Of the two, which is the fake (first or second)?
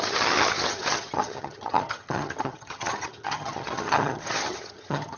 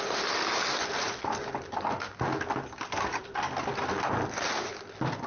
first